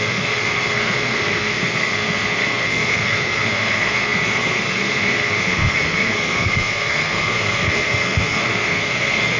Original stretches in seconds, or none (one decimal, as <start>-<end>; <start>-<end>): none